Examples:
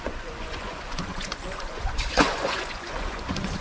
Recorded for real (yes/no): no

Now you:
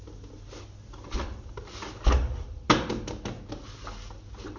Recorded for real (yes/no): yes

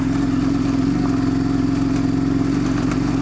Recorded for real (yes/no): yes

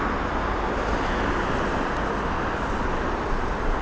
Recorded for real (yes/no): yes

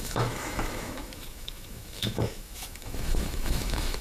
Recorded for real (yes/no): no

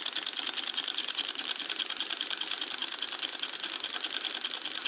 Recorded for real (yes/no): yes